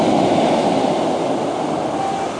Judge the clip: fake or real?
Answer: real